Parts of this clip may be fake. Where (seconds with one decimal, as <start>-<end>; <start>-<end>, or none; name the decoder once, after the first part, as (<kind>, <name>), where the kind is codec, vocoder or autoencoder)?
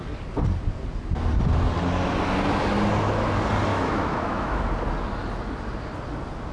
3.7-4.7 (autoencoder, DAC-VAE)